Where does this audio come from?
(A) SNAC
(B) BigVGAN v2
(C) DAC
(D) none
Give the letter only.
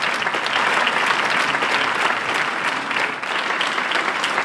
D